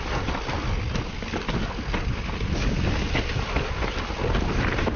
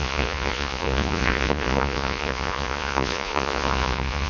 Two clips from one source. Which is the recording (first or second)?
first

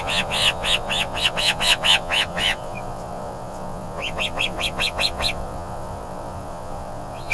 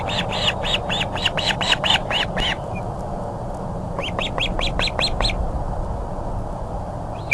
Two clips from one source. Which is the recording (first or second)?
second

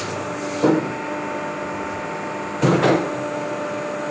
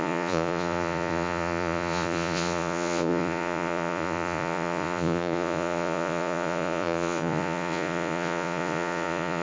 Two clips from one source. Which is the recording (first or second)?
first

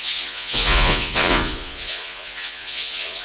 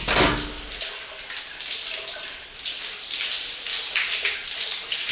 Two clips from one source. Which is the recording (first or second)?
second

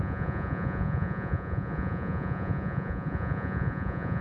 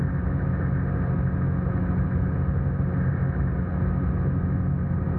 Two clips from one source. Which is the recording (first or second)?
second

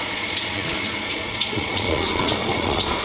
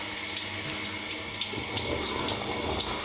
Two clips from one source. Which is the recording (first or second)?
second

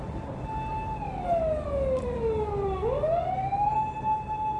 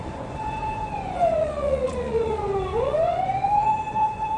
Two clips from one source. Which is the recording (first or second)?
first